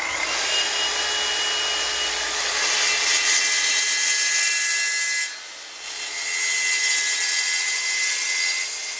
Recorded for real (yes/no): yes